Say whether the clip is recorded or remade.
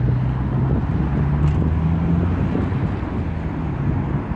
recorded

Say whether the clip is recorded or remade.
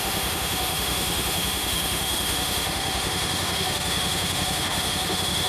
remade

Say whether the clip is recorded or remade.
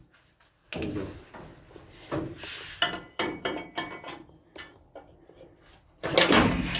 recorded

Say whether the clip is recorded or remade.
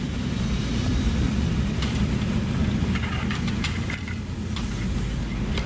remade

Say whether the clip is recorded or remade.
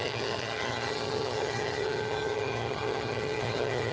remade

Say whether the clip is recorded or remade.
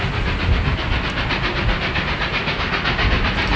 recorded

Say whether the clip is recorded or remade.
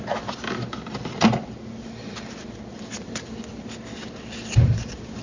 recorded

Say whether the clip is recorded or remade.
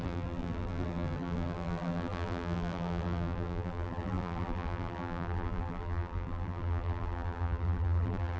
remade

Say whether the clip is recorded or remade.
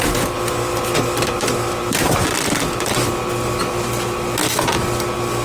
recorded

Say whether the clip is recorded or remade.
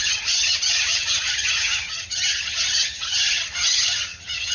remade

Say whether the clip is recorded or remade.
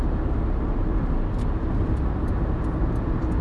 recorded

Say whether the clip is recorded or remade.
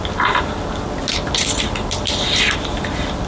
remade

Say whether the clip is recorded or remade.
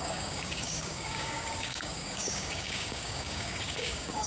remade